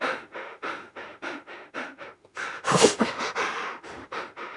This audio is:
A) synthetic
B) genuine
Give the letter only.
A